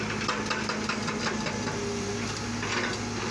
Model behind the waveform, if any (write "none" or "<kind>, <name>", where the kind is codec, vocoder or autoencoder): none